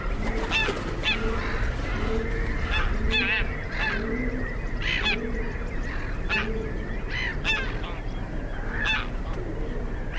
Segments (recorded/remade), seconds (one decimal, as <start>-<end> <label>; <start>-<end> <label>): 0.0-10.2 recorded